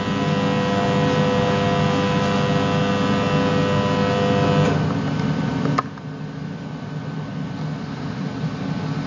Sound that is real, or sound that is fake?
real